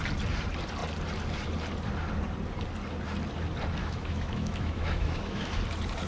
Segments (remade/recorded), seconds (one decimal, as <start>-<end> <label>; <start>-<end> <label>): 0.0-3.8 recorded; 3.8-5.6 remade; 5.6-6.1 recorded